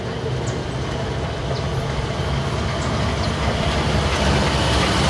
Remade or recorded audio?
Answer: recorded